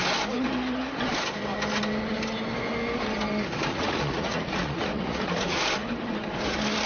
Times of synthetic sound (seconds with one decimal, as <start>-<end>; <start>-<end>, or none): 3.7-5.6